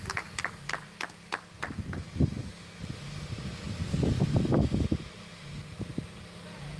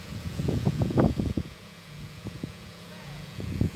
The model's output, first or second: second